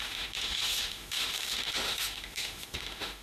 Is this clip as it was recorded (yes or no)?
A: no